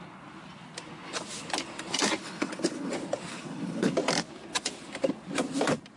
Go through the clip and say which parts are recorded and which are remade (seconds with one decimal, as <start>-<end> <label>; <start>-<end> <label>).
0.0-2.2 recorded; 2.2-2.9 remade; 2.9-3.3 recorded; 3.3-3.9 remade; 3.9-6.0 recorded